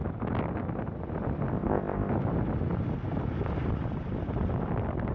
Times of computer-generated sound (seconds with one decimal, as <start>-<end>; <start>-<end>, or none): 1.5-2.1